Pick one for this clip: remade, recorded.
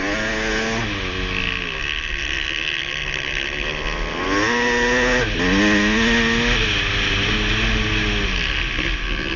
recorded